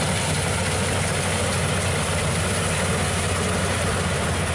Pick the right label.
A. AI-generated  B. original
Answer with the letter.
B